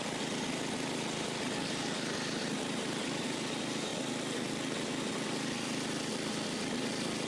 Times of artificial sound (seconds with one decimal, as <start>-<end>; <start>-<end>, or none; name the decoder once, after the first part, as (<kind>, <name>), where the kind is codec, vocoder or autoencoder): none